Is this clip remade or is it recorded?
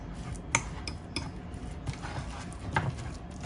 recorded